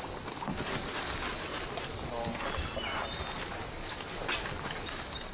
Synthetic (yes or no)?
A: no